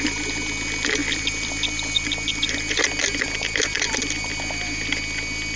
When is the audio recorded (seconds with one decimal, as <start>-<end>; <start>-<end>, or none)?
0.0-1.0; 4.4-5.6